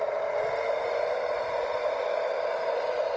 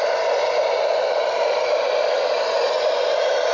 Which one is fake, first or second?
second